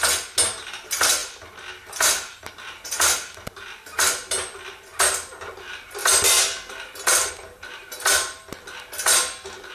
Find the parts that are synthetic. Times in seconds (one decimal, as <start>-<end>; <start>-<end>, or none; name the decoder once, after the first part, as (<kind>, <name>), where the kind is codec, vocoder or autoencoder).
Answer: 6.0-7.3 (vocoder, BigVGAN v2)